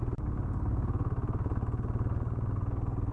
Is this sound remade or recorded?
recorded